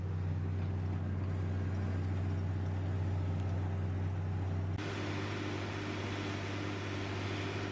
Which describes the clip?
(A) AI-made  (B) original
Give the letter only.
B